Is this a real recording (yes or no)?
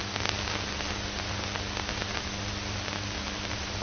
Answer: yes